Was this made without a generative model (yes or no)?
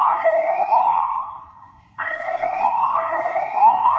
no